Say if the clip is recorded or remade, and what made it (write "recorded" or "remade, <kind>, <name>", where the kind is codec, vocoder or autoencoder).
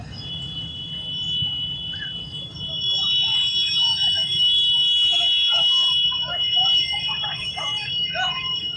remade, autoencoder, DAC-VAE